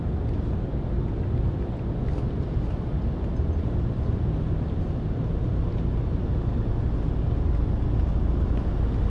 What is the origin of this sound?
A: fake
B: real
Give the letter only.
B